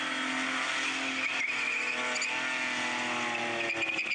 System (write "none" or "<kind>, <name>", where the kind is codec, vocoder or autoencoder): none